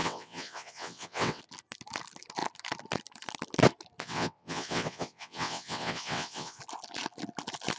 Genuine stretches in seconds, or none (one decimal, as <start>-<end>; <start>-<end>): 1.4-4.0; 6.6-7.8